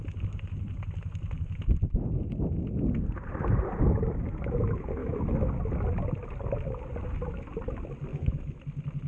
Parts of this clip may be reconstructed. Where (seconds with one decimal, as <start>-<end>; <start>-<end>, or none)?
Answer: 5.0-5.5; 8.1-8.6